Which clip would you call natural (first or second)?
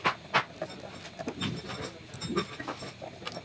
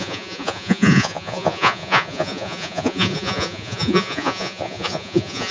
first